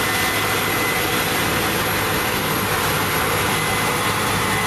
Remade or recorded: recorded